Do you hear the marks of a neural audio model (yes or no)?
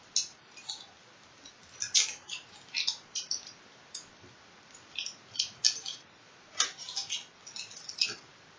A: no